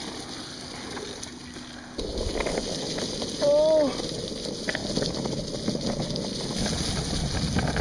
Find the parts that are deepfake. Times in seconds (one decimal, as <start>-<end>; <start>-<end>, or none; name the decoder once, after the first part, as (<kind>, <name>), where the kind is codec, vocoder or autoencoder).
none